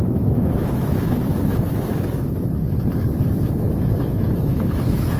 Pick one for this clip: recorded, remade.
remade